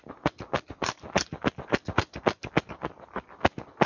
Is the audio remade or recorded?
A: recorded